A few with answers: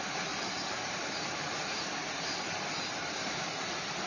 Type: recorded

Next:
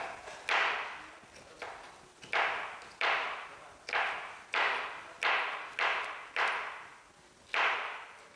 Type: recorded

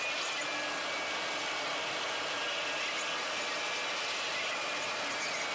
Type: recorded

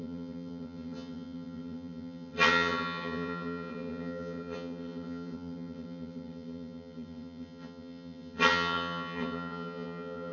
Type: remade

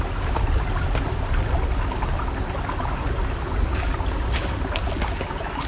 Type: recorded